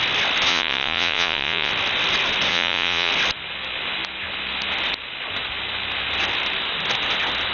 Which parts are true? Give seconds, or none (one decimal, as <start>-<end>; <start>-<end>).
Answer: 0.0-0.5; 1.7-2.5; 3.1-7.5